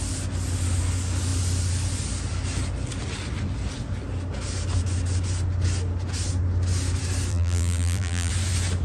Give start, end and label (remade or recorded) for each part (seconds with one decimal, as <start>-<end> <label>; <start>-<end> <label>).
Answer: 0.0-7.3 recorded; 7.3-8.3 remade; 8.3-8.8 recorded